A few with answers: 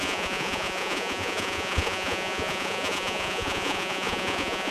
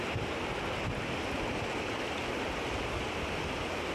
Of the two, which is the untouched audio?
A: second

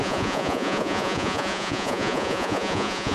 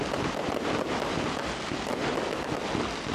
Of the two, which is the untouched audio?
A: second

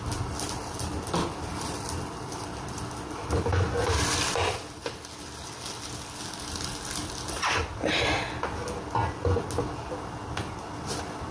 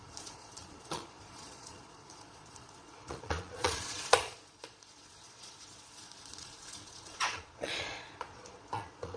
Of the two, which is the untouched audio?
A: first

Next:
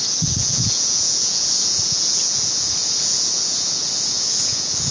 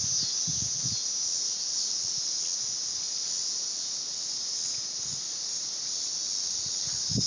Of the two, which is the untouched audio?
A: second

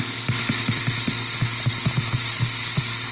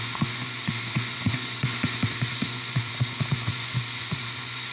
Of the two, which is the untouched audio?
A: first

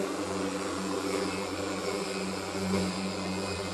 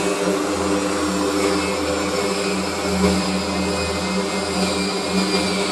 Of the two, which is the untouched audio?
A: second